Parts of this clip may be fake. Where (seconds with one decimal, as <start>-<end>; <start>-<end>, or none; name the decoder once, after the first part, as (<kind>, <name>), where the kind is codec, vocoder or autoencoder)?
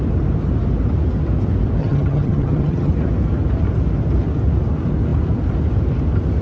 1.8-2.9 (vocoder, HiFi-GAN)